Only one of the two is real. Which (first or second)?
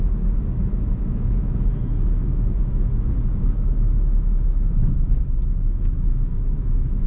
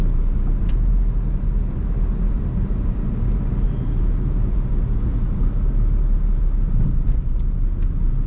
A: second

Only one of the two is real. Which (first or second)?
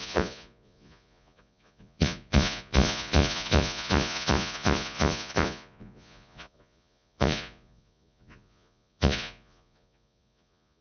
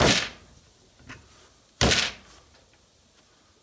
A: second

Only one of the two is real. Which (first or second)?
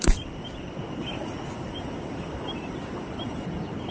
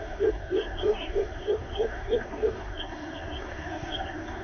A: first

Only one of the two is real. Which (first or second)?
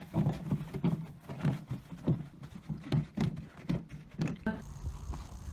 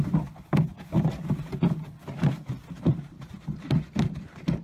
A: first